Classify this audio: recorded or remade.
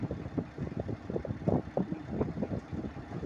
recorded